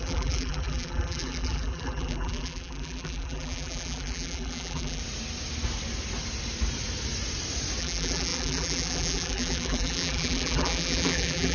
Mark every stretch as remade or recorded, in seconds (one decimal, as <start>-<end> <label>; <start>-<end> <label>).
0.0-5.0 remade; 5.0-7.8 recorded; 7.8-11.5 remade

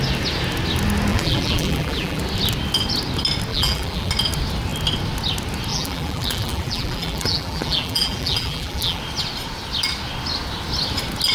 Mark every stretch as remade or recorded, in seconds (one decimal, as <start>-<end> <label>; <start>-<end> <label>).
0.0-1.1 recorded; 1.1-2.2 remade; 2.2-3.5 recorded; 3.5-4.1 remade; 4.1-5.7 recorded; 5.7-9.0 remade; 9.0-11.3 recorded

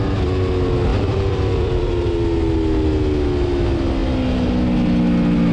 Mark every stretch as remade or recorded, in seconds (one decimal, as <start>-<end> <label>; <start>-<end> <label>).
0.0-0.9 recorded; 0.9-1.9 remade; 1.9-5.5 recorded

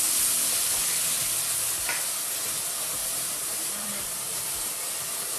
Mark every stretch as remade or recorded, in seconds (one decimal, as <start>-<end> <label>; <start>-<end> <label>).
0.0-3.0 recorded; 3.0-4.4 remade; 4.4-5.4 recorded

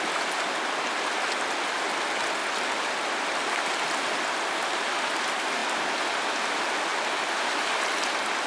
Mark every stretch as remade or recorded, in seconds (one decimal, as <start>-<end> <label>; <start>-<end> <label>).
0.0-8.5 recorded

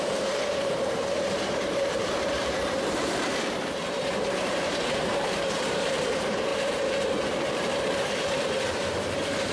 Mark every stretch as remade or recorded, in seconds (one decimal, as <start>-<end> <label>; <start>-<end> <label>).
0.0-9.5 remade